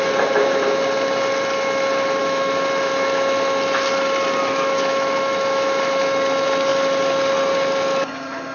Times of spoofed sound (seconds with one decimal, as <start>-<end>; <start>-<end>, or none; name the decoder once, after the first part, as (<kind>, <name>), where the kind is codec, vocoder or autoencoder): 2.2-2.9 (autoencoder, DAC-VAE); 4.4-6.0